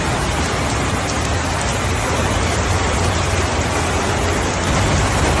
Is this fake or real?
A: real